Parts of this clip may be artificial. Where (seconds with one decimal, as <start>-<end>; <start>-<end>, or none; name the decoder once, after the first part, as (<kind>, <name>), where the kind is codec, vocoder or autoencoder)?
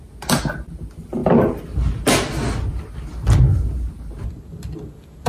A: none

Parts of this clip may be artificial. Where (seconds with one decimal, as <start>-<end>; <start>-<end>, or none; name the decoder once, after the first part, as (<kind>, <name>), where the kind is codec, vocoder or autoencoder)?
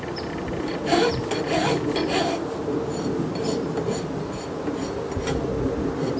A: none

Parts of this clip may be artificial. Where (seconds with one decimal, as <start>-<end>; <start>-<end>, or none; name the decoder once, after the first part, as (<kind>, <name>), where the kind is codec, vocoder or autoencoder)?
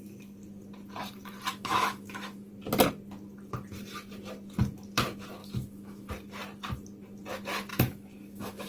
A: 1.5-2.5 (autoencoder, DAC-VAE); 5.4-6.1; 7.7-8.7